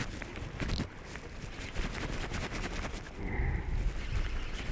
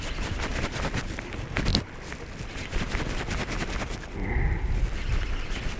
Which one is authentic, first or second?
second